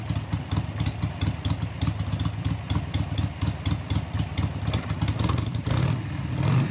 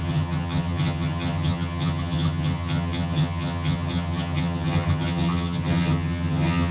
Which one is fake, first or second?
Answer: second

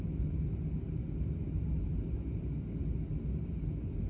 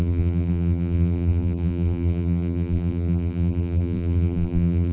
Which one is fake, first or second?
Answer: second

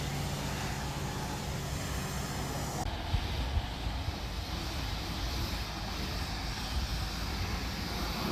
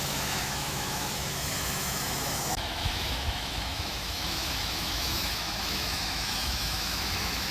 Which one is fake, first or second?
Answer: second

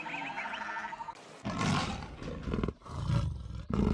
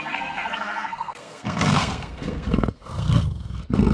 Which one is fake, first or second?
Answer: second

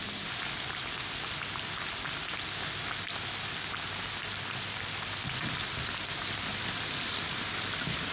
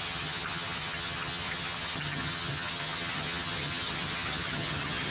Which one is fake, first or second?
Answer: second